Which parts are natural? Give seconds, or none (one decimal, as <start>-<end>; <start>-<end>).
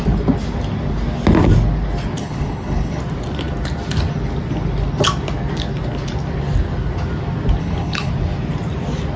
0.0-2.2; 3.0-7.6; 8.1-9.2